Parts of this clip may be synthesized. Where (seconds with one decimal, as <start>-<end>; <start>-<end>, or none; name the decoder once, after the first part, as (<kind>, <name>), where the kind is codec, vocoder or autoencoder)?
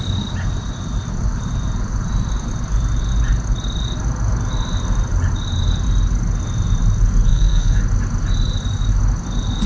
7.3-7.8 (codec, SNAC)